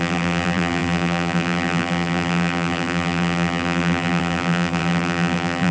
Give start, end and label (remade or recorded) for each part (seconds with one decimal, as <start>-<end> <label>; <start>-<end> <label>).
0.0-5.7 remade